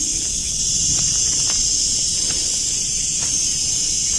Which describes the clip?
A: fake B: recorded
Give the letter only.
A